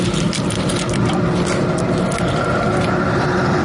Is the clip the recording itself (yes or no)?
yes